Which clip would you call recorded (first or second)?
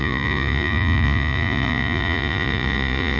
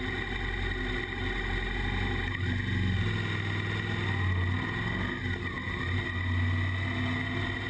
second